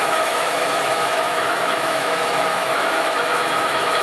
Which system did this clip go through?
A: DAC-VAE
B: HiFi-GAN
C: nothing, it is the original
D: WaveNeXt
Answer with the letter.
A